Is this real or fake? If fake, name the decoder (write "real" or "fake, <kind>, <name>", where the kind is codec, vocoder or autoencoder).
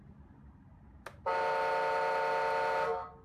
real